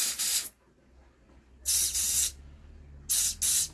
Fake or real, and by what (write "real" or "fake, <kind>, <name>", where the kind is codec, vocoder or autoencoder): real